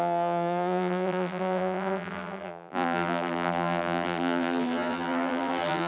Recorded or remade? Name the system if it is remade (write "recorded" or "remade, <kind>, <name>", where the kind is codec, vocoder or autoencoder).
remade, vocoder, BigVGAN v2